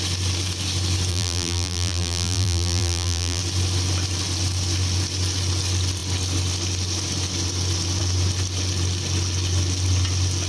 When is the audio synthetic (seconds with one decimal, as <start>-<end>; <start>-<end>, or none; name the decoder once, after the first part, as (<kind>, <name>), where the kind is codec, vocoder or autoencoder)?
1.1-3.4 (vocoder, BigVGAN v2)